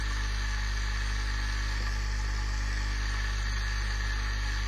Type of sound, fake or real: real